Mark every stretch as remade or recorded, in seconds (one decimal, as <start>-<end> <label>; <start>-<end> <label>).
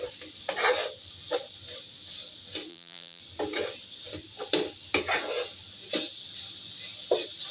0.0-2.7 recorded; 2.7-3.2 remade; 3.2-7.5 recorded